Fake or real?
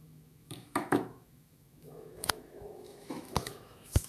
fake